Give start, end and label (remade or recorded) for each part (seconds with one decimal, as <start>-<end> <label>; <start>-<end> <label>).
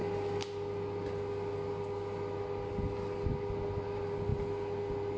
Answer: 0.0-5.2 recorded